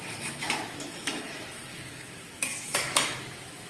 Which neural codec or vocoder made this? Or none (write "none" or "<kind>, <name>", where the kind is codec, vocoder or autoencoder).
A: autoencoder, DAC-VAE